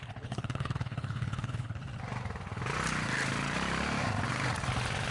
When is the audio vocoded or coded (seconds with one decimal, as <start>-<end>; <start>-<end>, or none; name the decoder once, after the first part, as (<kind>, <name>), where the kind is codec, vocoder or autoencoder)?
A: 0.0-1.8 (codec, HILCodec)